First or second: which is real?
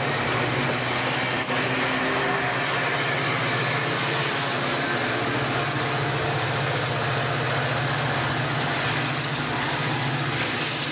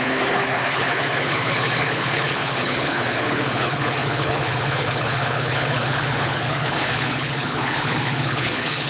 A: first